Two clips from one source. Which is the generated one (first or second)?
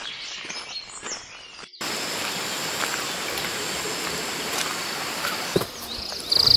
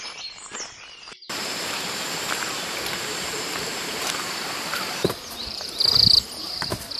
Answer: second